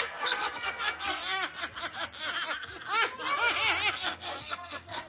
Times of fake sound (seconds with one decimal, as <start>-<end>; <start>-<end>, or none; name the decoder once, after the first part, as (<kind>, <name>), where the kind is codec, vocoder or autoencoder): 0.0-1.2 (codec, SNAC); 3.9-5.1